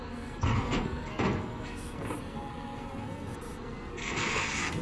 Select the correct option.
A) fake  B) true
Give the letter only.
A